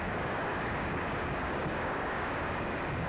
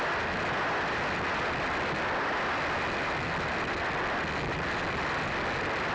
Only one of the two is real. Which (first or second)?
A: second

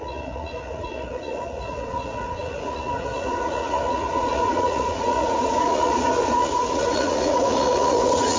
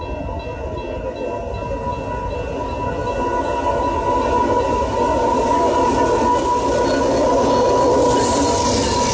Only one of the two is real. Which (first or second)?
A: second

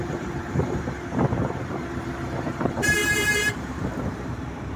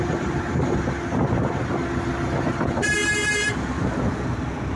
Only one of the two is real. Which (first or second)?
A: second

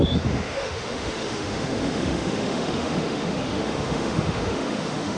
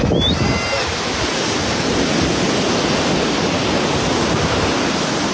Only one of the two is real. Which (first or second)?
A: second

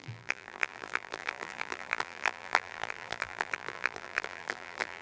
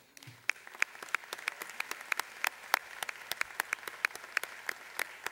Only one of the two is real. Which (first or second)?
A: second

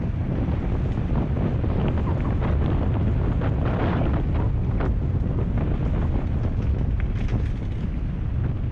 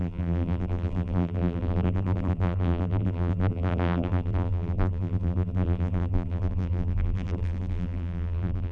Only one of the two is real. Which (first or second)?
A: first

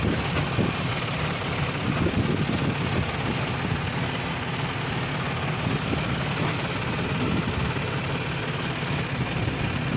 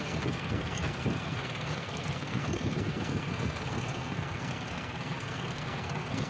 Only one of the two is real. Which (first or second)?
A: first